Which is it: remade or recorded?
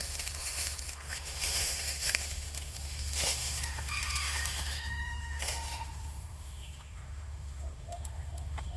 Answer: remade